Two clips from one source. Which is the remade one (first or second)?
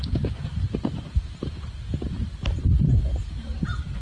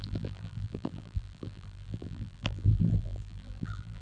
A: second